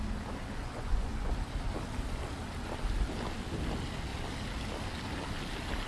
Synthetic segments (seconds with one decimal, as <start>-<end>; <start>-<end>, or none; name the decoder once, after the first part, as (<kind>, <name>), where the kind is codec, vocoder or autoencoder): 0.6-1.3 (vocoder, Vocos)